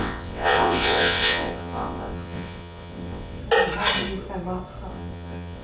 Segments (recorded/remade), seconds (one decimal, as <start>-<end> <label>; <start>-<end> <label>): 0.0-3.4 remade; 3.4-4.9 recorded; 4.9-5.6 remade